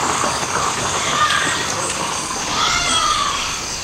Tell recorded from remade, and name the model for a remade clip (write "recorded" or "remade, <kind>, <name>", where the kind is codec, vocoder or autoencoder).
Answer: remade, codec, DAC